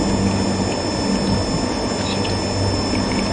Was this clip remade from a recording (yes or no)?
no